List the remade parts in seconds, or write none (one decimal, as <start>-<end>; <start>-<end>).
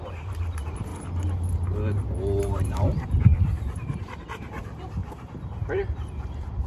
0.0-0.9; 2.4-6.7